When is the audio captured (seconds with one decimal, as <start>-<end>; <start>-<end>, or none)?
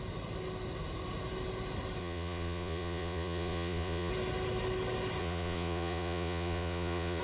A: 0.0-2.0; 4.1-5.2